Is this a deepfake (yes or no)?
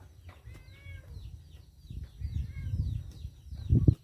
no